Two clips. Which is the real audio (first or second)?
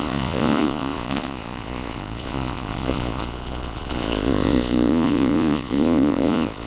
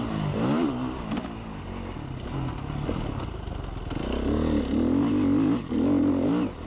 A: second